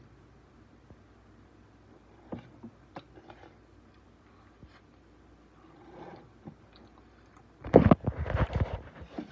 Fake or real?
real